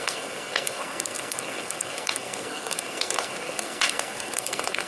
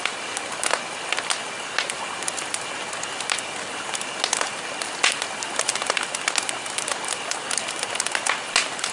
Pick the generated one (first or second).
first